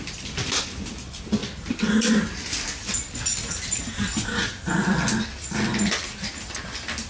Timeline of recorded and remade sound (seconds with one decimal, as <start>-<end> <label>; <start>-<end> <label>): 0.0-7.1 recorded